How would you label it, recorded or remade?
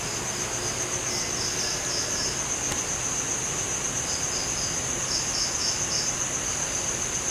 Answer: recorded